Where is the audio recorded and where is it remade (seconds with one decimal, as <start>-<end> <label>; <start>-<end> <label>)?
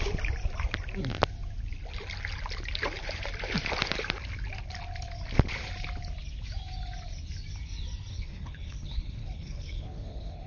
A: 0.0-8.1 recorded; 8.1-10.5 remade